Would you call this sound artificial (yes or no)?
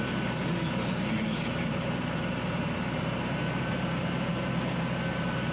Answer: no